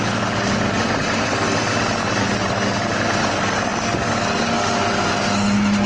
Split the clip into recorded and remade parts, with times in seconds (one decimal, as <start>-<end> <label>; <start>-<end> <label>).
0.0-2.0 recorded; 2.0-2.5 remade; 2.5-5.9 recorded